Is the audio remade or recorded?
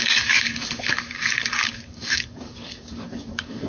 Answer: remade